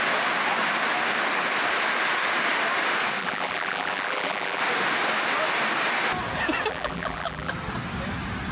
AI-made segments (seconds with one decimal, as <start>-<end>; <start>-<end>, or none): 3.2-4.6; 6.7-7.5